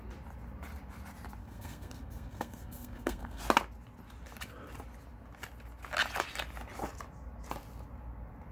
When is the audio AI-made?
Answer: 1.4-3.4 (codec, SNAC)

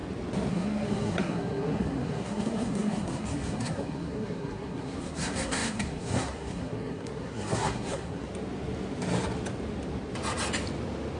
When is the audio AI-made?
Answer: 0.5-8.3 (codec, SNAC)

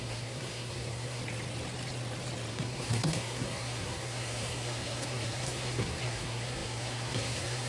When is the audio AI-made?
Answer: 0.0-1.2 (codec, SNAC); 2.5-7.7

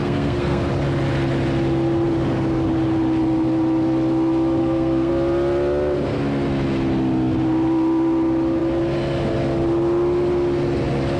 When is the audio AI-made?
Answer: 0.0-0.6 (codec, SNAC); 4.6-5.1

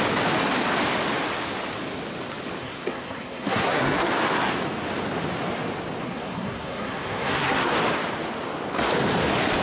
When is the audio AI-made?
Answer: 2.6-4.1 (codec, SNAC); 6.0-7.7

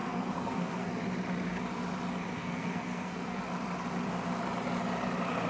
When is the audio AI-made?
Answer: 0.0-0.9 (codec, SNAC); 2.3-3.4

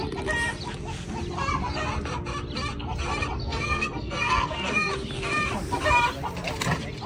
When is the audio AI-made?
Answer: 3.4-4.9 (codec, SNAC)